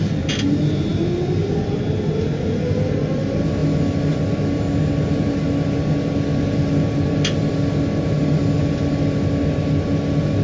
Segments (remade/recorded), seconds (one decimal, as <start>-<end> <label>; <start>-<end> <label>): 0.0-10.4 recorded